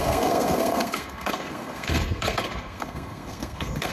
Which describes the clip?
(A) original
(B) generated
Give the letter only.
B